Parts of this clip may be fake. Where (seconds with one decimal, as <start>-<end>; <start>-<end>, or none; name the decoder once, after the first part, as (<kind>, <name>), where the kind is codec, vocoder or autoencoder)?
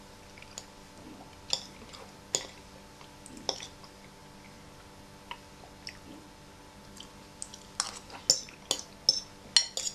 none